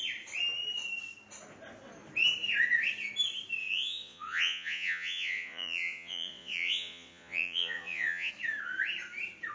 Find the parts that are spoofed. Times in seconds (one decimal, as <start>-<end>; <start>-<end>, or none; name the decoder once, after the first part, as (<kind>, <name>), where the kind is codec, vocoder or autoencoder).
3.6-8.3 (vocoder, Vocos)